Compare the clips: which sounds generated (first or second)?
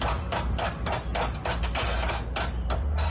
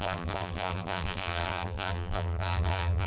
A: second